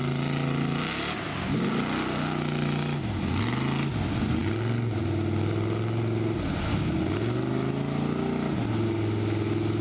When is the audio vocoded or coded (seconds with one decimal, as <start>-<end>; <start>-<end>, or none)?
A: none